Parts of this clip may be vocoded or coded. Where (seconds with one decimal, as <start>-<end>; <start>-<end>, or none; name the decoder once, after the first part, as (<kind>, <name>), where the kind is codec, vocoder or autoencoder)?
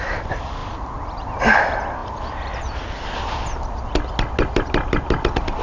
none